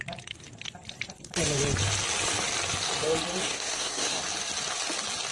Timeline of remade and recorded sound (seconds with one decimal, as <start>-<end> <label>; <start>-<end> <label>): 0.0-3.4 recorded; 3.4-4.2 remade; 4.2-5.3 recorded